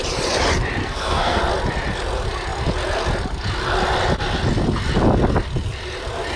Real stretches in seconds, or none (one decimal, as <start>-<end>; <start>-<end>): 0.0-0.8; 1.4-6.4